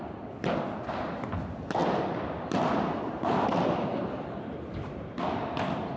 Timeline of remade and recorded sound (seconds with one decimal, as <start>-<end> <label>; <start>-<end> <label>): 0.0-6.0 recorded

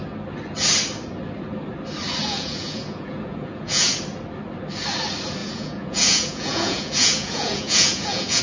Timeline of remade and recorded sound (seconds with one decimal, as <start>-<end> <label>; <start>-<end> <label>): 0.0-2.2 recorded; 2.2-3.9 remade; 3.9-5.4 recorded; 5.4-8.4 remade